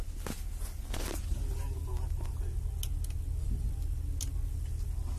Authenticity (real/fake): real